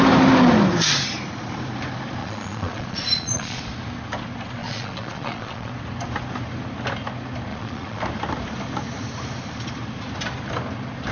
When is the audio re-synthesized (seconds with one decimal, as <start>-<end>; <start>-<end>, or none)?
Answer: 2.2-3.6; 4.6-5.7; 7.5-8.0